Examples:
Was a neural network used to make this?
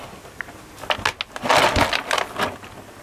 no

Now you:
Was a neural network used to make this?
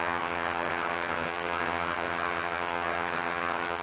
yes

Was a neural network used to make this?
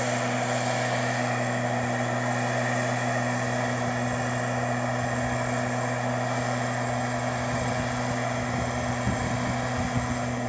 no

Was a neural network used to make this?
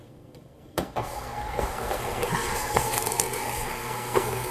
yes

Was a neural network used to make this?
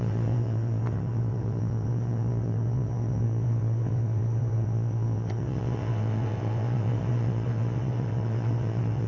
yes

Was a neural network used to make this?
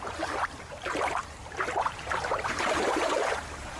yes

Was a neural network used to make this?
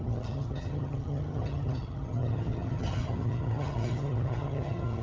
yes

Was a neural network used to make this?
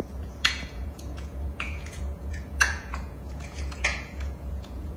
yes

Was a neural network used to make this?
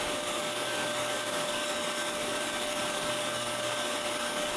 yes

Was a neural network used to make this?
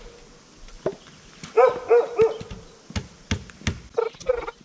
no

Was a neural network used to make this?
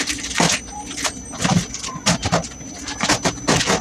no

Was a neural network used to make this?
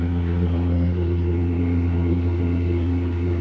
yes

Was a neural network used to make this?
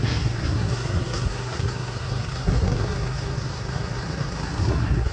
yes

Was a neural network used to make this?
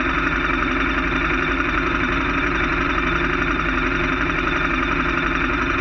yes